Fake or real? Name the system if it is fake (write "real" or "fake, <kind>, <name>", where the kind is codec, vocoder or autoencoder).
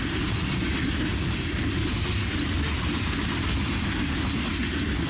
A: real